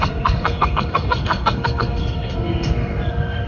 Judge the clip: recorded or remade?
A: remade